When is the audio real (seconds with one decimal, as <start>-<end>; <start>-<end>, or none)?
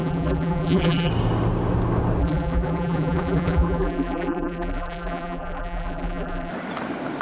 1.1-2.2; 6.5-7.2